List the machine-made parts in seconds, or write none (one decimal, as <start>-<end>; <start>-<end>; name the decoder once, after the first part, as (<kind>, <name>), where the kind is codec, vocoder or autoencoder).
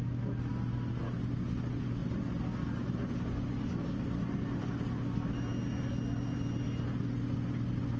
none